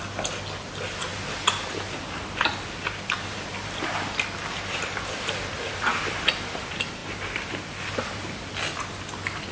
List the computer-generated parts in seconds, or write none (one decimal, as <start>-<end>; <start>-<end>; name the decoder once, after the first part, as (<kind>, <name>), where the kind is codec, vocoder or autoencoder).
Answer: none